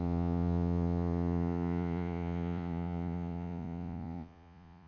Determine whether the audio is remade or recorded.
remade